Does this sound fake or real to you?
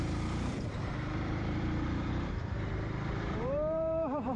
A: fake